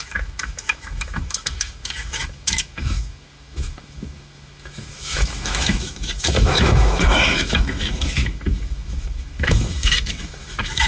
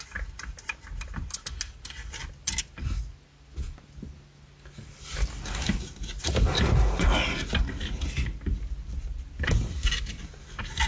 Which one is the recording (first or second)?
second